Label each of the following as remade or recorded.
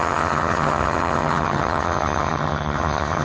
remade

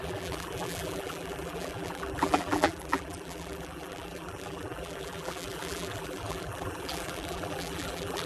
remade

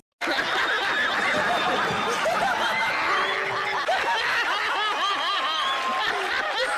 recorded